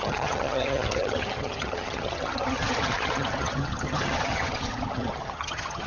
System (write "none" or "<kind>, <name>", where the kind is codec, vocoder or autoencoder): vocoder, HiFi-GAN